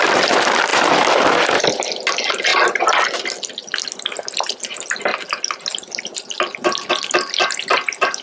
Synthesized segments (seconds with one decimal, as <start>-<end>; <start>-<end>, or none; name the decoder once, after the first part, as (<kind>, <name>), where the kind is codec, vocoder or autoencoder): 0.7-1.6 (vocoder, BigVGAN v2)